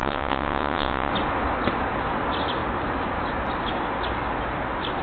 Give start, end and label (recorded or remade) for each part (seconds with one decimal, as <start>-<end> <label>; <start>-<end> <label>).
0.0-1.1 remade; 1.1-5.0 recorded